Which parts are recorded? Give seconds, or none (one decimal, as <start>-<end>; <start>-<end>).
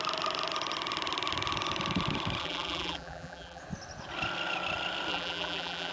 0.0-2.4; 3.6-5.1